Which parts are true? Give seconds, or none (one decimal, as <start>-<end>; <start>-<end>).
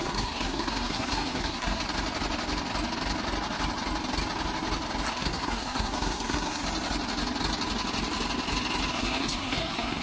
1.8-5.1; 6.6-8.9